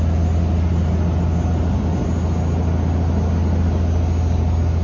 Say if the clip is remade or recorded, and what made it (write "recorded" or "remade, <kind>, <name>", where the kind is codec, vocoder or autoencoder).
recorded